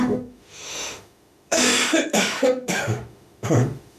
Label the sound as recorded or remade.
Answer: remade